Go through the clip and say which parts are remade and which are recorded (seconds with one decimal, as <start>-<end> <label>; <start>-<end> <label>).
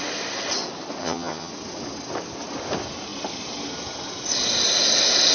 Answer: 0.0-1.0 recorded; 1.0-1.5 remade; 1.5-5.3 recorded